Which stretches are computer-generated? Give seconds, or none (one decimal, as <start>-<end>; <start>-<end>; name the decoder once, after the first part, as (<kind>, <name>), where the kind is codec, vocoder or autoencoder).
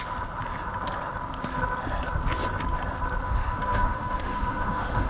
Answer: 3.2-5.1 (autoencoder, DAC-VAE)